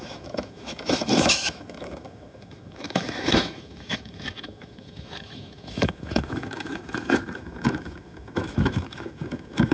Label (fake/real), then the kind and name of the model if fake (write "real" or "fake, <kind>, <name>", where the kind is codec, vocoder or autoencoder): fake, autoencoder, DAC-VAE